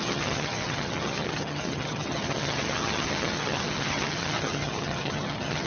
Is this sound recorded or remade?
remade